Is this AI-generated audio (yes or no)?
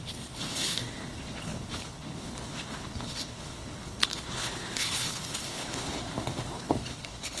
yes